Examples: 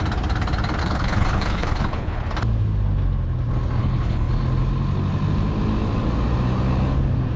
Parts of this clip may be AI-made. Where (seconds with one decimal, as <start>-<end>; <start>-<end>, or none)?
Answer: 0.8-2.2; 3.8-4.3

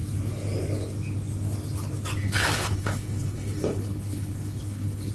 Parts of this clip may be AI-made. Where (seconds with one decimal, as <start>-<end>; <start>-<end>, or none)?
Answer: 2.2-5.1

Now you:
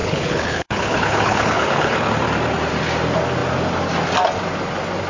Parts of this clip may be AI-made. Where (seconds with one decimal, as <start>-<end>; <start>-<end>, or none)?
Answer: 0.0-2.1

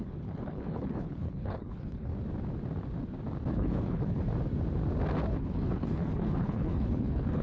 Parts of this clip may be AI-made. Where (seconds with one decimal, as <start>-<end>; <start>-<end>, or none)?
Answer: 0.0-2.1; 3.5-4.2; 5.3-7.4

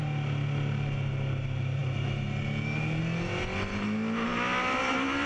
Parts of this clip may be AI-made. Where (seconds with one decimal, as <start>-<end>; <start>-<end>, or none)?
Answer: none

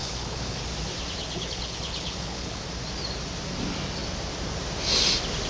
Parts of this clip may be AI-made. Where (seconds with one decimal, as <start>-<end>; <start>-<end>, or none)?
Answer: 0.0-0.6; 1.2-2.6

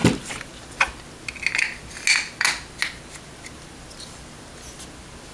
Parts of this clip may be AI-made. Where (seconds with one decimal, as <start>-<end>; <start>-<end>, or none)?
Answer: none